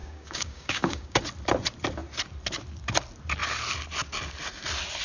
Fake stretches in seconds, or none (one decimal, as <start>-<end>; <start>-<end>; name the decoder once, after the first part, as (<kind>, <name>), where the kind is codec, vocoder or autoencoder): 0.0-1.2 (codec, DAC)